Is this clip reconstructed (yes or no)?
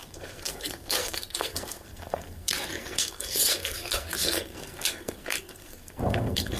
yes